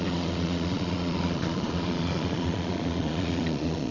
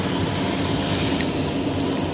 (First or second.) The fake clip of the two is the first